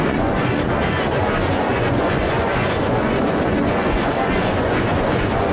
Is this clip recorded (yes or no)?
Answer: no